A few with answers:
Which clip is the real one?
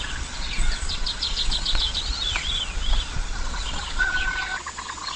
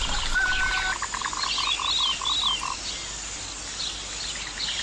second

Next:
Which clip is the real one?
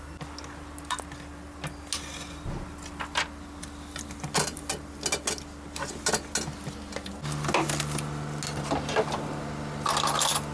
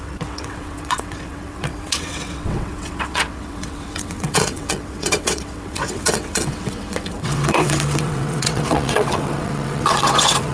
first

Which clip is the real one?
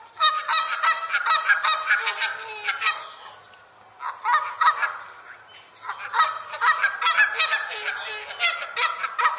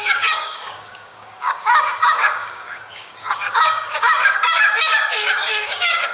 first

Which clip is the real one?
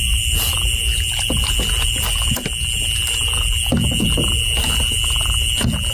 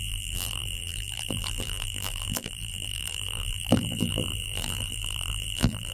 first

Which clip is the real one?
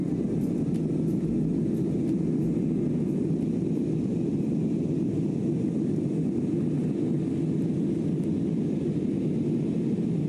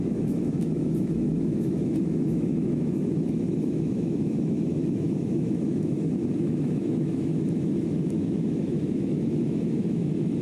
first